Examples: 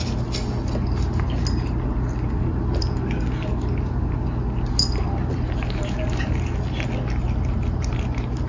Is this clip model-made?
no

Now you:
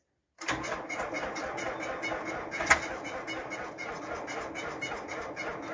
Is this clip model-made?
no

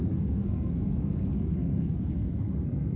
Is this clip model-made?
yes